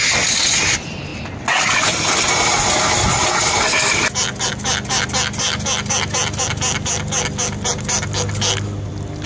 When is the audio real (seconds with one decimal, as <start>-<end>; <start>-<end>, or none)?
0.0-9.3